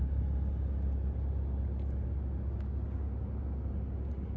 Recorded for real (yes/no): yes